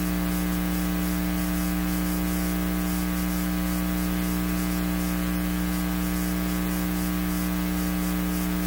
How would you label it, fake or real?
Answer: real